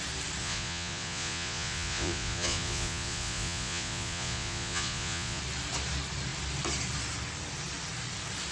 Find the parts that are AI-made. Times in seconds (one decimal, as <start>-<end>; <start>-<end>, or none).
0.4-5.4